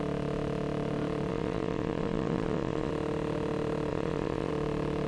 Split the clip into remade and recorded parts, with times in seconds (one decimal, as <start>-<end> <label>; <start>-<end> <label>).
0.0-1.3 recorded; 1.3-2.9 remade; 2.9-3.9 recorded; 3.9-4.5 remade; 4.5-5.1 recorded

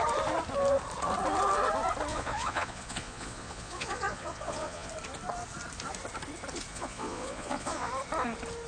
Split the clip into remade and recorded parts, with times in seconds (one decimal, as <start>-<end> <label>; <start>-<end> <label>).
0.0-2.1 recorded; 2.1-4.9 remade; 4.9-6.7 recorded; 6.7-7.9 remade; 7.9-8.7 recorded

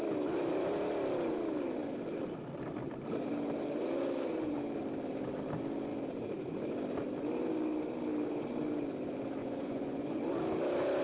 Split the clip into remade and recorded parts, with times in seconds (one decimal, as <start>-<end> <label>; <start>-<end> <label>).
0.0-9.4 recorded; 9.4-10.2 remade; 10.2-11.0 recorded